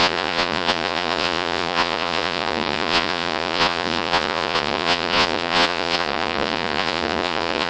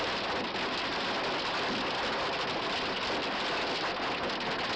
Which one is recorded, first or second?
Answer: second